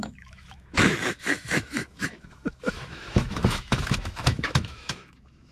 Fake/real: fake